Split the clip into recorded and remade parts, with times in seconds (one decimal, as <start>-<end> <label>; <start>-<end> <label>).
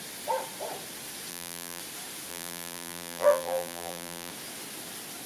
0.0-1.3 recorded; 1.3-1.8 remade; 1.8-2.3 recorded; 2.3-4.3 remade; 4.3-5.3 recorded